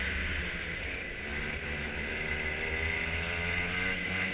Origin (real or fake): real